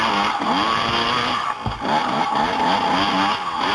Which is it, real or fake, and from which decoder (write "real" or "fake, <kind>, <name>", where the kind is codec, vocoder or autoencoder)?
real